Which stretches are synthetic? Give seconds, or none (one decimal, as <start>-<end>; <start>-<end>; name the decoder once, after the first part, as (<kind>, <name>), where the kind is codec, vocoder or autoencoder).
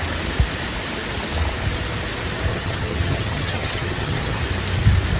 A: 2.5-4.4 (vocoder, HiFi-GAN)